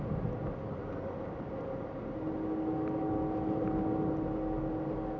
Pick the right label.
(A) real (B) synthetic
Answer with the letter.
A